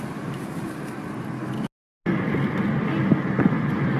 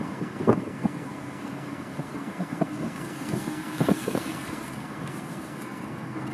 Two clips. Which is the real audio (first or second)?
first